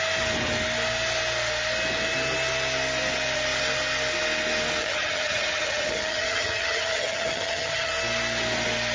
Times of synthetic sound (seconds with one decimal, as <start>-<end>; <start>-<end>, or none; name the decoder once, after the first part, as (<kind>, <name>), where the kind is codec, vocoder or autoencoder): 4.8-7.9 (vocoder, HiFi-GAN)